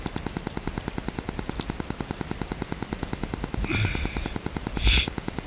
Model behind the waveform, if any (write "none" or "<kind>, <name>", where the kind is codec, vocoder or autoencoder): none